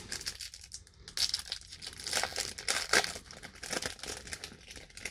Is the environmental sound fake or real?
real